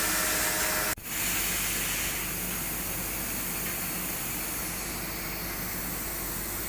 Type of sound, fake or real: real